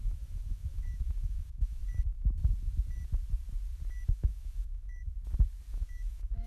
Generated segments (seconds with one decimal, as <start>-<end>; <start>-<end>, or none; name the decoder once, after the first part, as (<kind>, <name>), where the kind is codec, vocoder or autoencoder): 0.0-1.8 (autoencoder, DAC-VAE); 4.1-5.1; 5.7-6.5